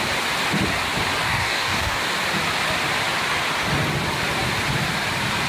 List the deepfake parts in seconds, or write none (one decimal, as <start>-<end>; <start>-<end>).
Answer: 1.2-2.0